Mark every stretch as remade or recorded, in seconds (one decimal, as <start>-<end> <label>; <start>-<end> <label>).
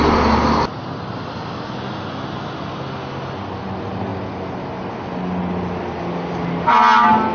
0.0-7.3 recorded